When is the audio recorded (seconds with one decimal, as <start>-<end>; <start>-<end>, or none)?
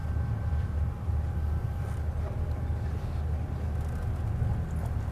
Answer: 0.0-5.1